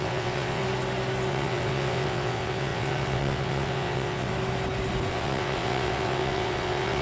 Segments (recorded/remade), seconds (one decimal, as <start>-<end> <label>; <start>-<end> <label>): 0.0-0.6 remade; 0.6-1.3 recorded; 1.3-4.3 remade; 4.3-5.1 recorded; 5.1-7.0 remade